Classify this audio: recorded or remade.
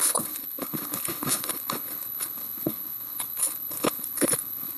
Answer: remade